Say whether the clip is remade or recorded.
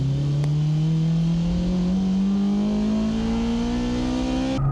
recorded